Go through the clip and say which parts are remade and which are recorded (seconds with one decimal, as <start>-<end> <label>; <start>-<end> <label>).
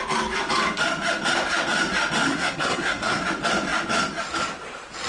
0.0-2.3 recorded; 2.3-3.2 remade; 3.2-5.1 recorded